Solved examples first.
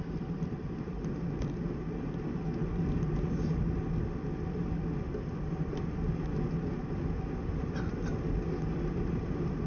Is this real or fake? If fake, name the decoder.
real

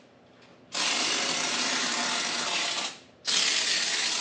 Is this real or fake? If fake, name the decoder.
real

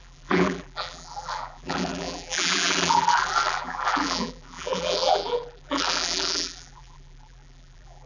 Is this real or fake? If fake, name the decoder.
fake, vocoder, BigVGAN v2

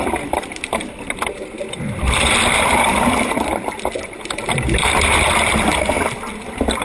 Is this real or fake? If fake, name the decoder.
real